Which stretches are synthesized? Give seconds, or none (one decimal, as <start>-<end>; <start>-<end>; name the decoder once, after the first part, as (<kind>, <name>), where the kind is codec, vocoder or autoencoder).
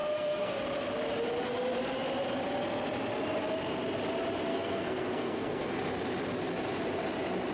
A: 0.0-0.6 (codec, SNAC); 4.5-5.8